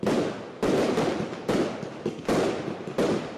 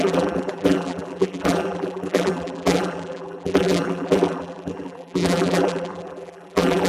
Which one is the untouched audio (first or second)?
first